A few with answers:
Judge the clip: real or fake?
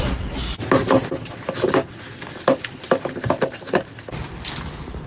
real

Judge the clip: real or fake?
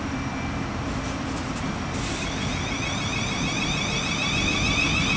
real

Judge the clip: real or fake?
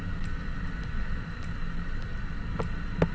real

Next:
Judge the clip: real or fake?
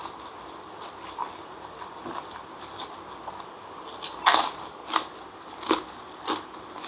real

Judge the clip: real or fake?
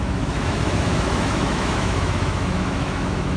fake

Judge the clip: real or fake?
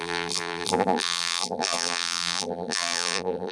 fake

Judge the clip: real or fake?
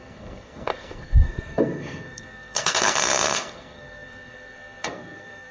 fake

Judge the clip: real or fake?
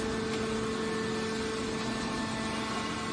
real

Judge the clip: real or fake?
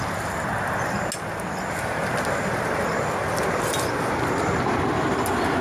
real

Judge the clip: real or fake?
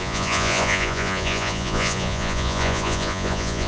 fake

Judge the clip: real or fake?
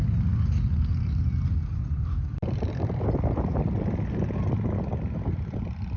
real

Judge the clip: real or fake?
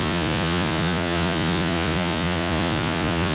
fake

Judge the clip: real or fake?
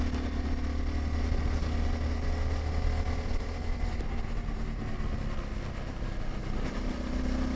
real